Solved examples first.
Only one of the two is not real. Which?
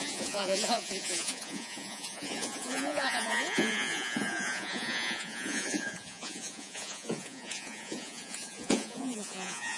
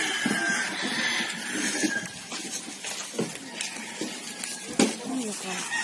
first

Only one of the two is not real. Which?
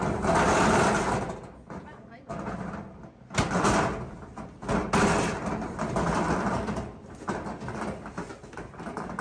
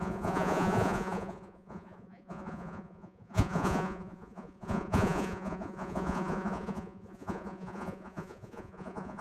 second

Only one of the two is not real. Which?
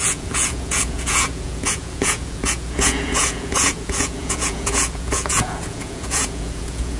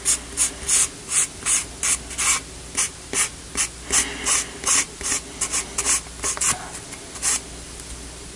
first